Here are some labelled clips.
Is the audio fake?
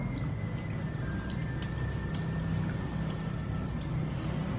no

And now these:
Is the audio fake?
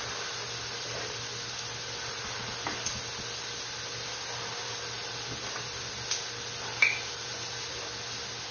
no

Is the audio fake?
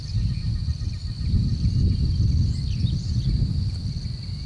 no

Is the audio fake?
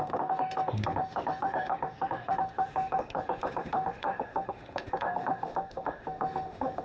yes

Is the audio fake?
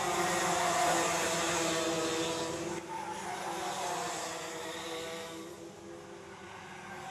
no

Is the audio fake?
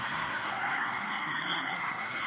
yes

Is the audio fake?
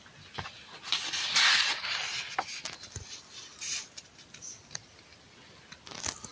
no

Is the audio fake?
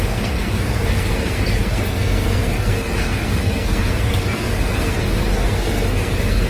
yes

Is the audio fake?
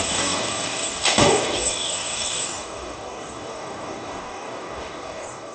yes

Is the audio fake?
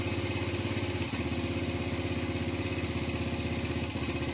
no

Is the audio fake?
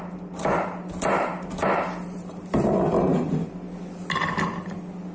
no